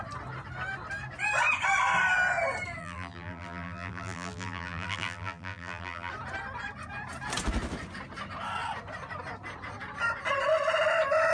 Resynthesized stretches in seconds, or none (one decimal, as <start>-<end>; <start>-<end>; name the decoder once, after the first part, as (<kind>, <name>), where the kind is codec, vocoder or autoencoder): 2.8-6.1 (vocoder, BigVGAN v2)